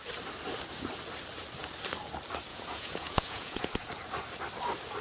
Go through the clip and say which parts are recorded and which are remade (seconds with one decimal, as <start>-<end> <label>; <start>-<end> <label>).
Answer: 0.0-2.5 recorded; 2.5-3.9 remade; 3.9-5.0 recorded